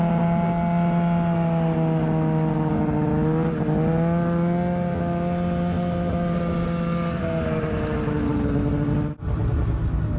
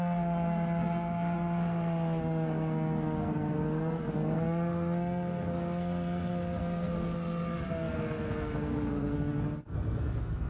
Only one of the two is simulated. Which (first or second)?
second